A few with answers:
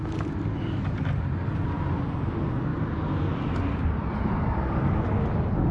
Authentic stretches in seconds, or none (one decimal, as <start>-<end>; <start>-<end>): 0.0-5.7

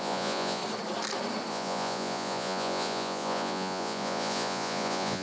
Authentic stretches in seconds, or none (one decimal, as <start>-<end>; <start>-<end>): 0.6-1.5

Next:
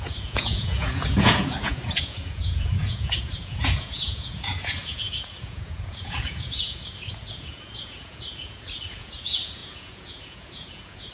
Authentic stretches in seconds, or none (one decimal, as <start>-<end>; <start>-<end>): none